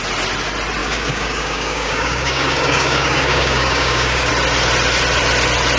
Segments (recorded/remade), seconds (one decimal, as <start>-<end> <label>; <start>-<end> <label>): 0.0-0.8 recorded; 0.8-4.3 remade; 4.3-5.8 recorded

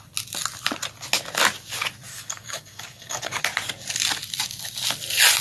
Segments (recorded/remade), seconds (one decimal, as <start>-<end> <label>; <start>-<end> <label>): 0.0-2.1 recorded; 2.1-3.4 remade; 3.4-5.4 recorded

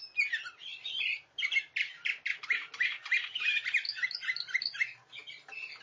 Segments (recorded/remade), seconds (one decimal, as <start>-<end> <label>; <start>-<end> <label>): 0.0-5.8 recorded

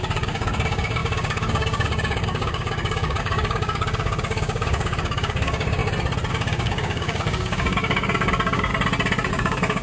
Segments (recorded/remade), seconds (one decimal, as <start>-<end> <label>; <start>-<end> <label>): 0.0-5.8 remade; 5.8-6.3 recorded; 6.3-8.7 remade; 8.7-9.3 recorded; 9.3-9.8 remade

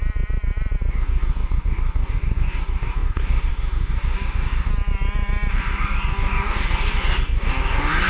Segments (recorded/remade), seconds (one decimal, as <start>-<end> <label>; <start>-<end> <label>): 0.0-0.9 recorded; 0.9-4.7 remade; 4.7-5.5 recorded; 5.5-8.1 remade

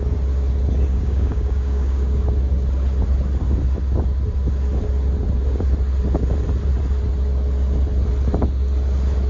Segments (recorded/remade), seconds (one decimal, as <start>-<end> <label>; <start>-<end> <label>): 0.0-0.9 recorded; 0.9-2.2 remade; 2.2-9.3 recorded